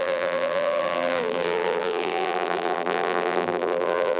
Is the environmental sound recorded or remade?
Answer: remade